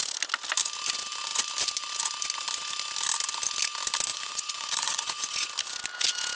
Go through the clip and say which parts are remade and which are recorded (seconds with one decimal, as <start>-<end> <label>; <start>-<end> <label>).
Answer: 0.0-4.1 recorded; 4.1-5.5 remade; 5.5-6.4 recorded